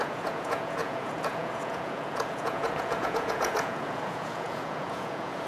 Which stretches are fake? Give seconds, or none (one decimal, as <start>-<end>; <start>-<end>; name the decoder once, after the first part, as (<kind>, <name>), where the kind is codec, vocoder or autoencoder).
0.0-5.5 (vocoder, Vocos)